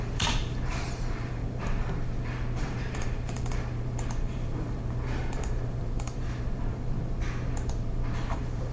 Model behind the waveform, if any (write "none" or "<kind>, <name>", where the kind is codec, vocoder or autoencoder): vocoder, BigVGAN v2